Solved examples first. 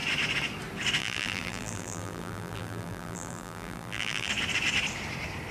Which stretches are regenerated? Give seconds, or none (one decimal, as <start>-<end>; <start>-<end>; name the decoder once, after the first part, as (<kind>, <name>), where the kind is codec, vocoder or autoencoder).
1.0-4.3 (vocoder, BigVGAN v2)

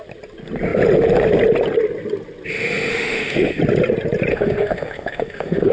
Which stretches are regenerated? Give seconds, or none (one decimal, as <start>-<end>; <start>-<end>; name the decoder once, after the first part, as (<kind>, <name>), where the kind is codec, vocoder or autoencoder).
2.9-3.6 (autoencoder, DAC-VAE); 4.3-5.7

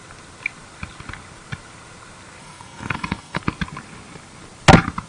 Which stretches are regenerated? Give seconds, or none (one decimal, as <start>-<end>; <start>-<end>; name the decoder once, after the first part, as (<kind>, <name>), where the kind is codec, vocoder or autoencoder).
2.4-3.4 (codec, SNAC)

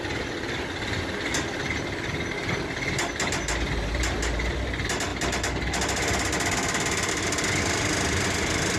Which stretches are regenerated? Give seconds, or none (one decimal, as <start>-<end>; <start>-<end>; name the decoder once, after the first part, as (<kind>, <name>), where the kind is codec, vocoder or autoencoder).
none

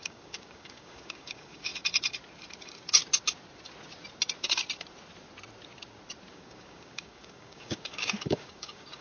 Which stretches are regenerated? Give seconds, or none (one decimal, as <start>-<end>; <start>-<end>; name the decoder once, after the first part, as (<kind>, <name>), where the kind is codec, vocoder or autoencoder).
0.0-1.7 (codec, DAC); 2.6-3.0; 6.3-9.0